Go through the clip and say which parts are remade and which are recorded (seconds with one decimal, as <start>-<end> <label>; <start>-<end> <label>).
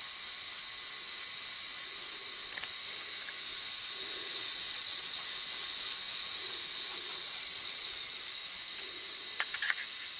0.0-4.2 recorded; 4.2-5.3 remade; 5.3-7.1 recorded; 7.1-8.2 remade; 8.2-10.2 recorded